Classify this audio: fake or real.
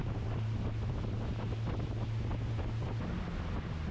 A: real